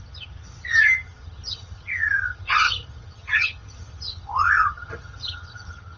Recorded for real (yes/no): no